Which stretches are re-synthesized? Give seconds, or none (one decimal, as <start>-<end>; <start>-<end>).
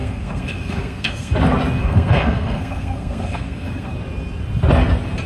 0.0-1.3; 1.8-3.9